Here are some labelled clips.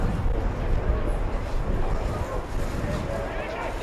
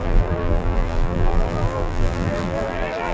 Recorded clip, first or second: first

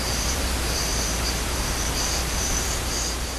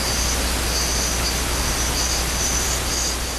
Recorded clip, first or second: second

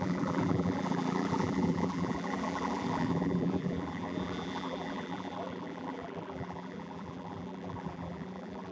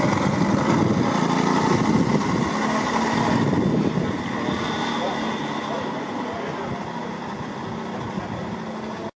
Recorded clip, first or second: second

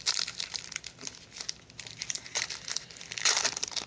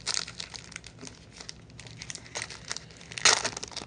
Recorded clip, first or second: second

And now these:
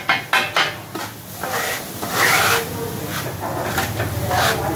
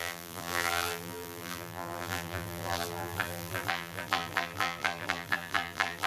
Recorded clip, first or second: first